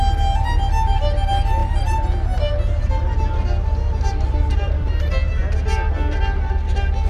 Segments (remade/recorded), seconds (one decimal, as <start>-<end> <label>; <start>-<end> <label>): 0.0-4.1 recorded; 4.1-4.9 remade; 4.9-7.1 recorded